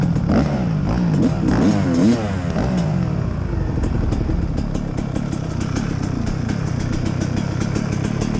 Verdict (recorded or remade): recorded